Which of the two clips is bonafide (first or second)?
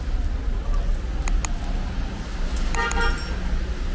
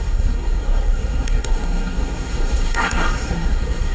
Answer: first